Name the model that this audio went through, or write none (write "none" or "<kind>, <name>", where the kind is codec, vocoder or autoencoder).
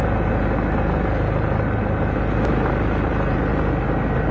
none